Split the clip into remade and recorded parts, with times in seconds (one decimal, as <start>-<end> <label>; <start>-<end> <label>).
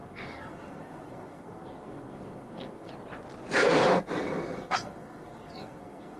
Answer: 0.0-2.9 remade; 2.9-4.2 recorded; 4.2-6.2 remade